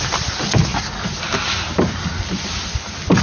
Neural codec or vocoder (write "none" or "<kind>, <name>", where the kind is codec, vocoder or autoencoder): none